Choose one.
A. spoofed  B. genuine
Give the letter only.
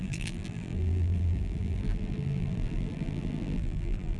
A